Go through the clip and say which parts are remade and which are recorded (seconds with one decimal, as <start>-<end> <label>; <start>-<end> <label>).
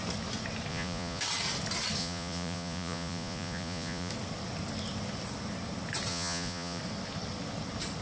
0.0-0.7 recorded; 0.7-1.2 remade; 1.2-2.0 recorded; 2.0-4.1 remade; 4.1-6.1 recorded; 6.1-6.8 remade; 6.8-8.0 recorded